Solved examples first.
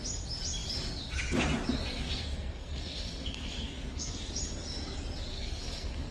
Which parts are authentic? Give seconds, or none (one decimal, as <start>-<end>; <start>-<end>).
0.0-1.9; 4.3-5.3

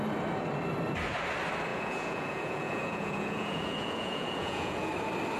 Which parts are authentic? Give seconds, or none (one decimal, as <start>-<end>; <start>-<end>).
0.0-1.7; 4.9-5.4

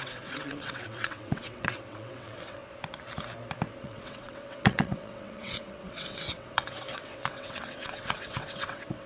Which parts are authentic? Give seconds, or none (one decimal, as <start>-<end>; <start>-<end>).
2.6-3.8